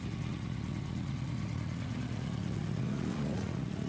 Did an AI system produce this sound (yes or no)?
yes